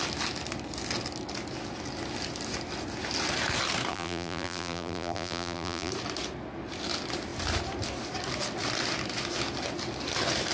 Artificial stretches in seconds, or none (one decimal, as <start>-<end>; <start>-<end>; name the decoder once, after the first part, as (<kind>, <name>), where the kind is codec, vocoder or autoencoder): 3.9-5.9 (vocoder, BigVGAN v2)